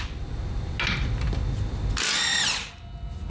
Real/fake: real